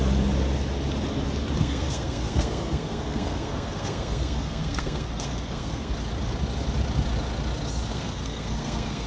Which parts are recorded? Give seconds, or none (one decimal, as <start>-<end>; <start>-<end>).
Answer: 0.0-1.6; 5.9-7.9